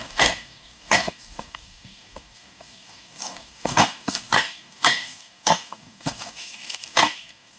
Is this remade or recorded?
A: remade